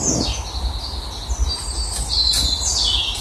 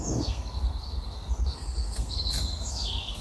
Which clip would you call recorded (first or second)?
first